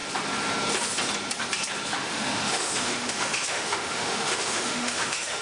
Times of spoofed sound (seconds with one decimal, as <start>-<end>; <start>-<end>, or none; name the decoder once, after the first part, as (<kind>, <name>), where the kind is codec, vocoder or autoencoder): 1.9-5.4 (autoencoder, DAC-VAE)